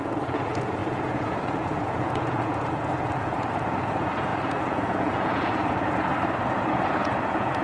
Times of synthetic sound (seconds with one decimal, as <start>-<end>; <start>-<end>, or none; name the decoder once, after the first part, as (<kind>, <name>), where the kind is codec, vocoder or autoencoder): 0.0-6.1 (vocoder, Vocos); 6.9-7.6